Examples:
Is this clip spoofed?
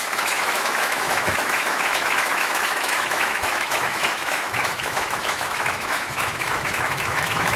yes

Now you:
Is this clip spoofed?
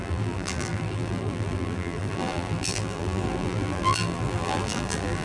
yes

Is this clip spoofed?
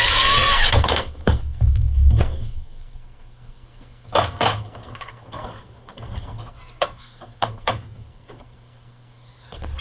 yes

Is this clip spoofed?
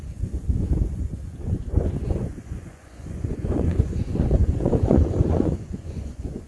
yes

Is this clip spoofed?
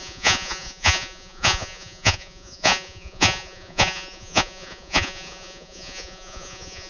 yes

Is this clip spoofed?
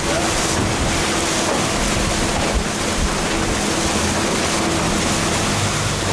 no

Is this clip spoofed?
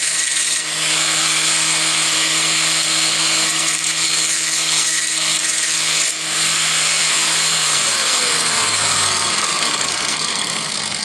yes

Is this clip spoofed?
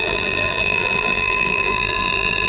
yes